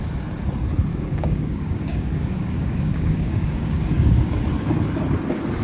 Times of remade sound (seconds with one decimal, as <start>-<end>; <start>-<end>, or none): 0.9-4.3

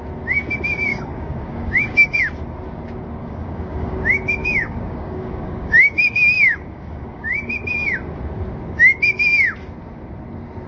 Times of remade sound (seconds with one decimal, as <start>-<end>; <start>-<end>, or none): 0.9-2.2; 3.2-3.9; 4.4-7.5

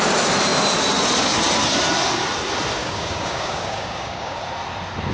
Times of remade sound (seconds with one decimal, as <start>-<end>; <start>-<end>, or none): 2.8-4.4

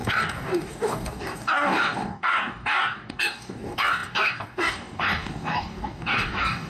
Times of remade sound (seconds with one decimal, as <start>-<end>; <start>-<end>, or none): 0.0-6.7

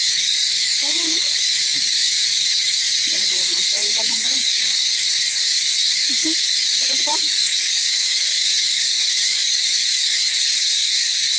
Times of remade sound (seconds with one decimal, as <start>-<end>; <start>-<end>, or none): 0.0-11.4